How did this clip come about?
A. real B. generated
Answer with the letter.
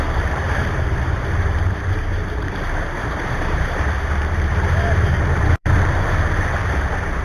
B